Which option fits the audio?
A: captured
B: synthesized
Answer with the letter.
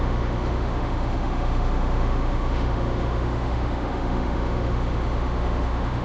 B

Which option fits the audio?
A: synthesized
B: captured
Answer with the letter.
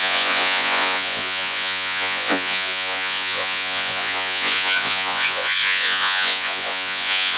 A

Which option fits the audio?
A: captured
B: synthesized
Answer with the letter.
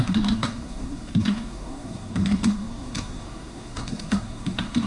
B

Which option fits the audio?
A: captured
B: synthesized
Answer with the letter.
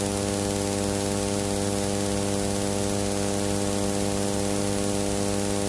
A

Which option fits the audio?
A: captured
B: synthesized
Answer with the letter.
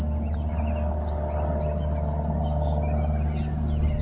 A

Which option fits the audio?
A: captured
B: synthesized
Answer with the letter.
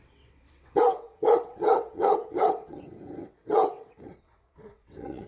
B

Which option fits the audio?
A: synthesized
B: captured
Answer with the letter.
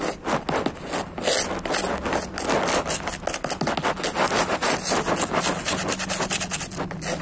B